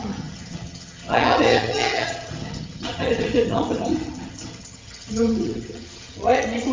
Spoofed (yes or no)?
yes